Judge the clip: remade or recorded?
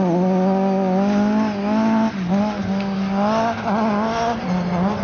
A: recorded